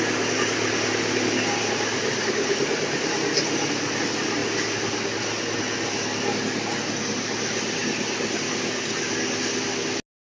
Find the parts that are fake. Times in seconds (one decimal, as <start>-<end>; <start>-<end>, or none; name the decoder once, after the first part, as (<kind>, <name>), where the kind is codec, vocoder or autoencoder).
none